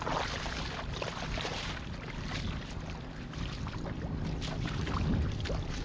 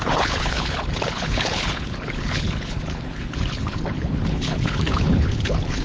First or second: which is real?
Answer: first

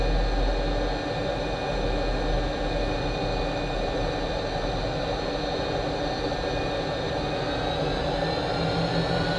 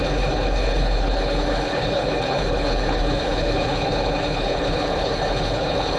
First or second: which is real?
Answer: first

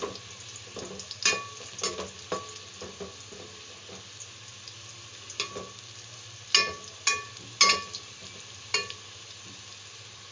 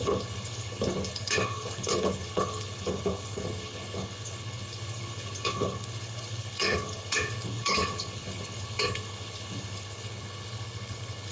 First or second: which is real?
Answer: first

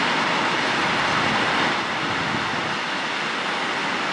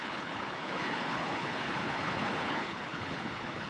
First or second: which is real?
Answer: first